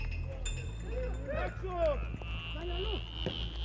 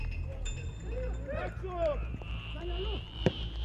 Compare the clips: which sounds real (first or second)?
first